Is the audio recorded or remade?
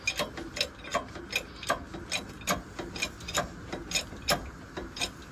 recorded